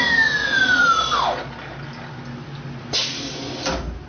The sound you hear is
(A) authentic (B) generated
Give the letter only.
A